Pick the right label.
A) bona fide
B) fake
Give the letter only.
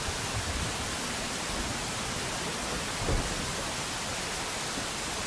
A